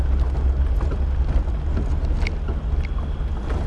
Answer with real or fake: real